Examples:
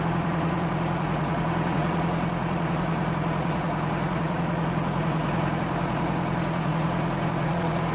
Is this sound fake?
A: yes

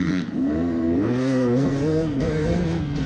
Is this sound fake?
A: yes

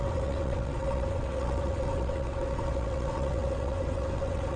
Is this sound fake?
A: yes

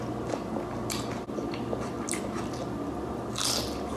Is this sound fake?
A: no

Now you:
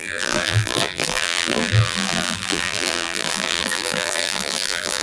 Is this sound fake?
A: yes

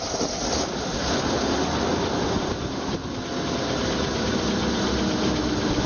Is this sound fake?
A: no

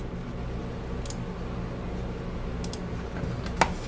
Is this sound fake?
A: no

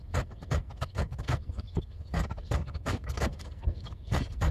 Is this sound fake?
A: yes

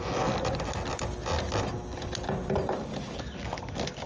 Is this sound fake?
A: no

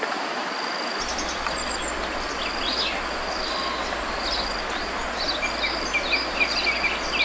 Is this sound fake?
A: no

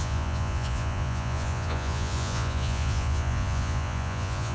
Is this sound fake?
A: yes